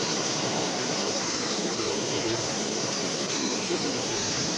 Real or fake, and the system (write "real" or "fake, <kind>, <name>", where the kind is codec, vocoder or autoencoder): fake, codec, SNAC